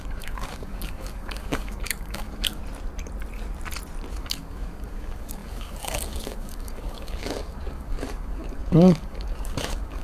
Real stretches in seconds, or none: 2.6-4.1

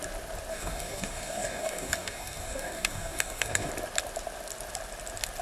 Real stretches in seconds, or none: 0.0-0.5; 3.7-5.4

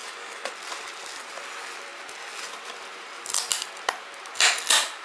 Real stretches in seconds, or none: 0.5-5.0

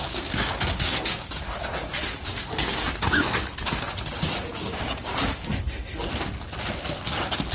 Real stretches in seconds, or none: 1.3-2.3; 2.8-4.5; 5.5-7.5

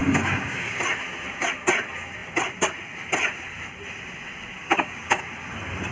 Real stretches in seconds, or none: 0.8-4.6; 5.2-5.9

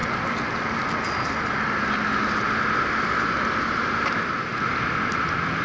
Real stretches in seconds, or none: 0.0-5.6

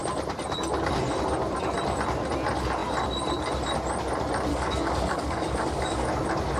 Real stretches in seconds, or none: 0.0-4.5; 6.1-6.6

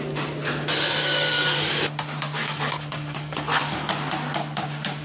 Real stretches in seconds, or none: 0.0-1.0; 1.8-2.4; 3.9-5.0